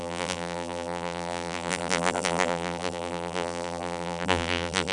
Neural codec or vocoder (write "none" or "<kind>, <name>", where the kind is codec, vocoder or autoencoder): vocoder, BigVGAN v2